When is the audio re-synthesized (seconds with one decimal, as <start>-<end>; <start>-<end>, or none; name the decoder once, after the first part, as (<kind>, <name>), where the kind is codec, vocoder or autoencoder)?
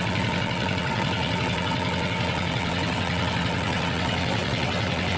0.0-5.2 (vocoder, WaveNeXt)